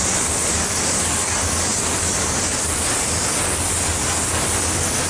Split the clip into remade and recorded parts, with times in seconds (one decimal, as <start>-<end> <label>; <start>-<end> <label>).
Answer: 0.0-5.1 recorded